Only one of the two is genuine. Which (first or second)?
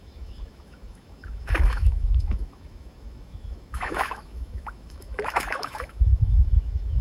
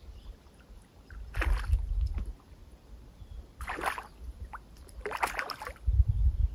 second